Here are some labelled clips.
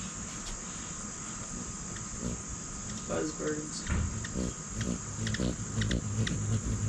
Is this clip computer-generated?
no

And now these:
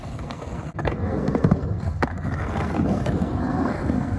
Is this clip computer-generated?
yes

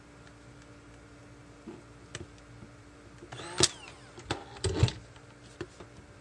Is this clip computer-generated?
no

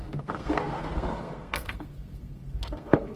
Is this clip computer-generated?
yes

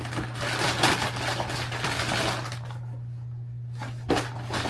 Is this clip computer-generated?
no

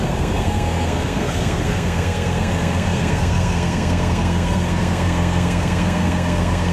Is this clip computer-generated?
yes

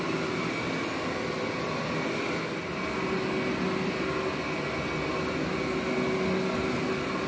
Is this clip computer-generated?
no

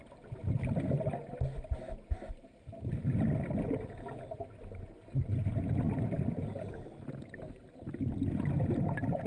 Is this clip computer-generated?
no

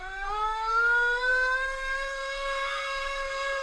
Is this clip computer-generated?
yes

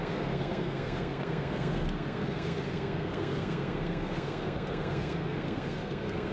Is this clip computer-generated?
yes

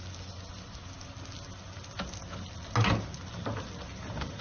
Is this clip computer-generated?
no